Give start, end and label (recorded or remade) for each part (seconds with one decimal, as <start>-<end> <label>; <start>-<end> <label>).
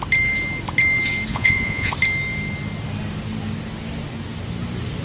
0.0-1.3 recorded; 1.3-1.9 remade; 1.9-5.0 recorded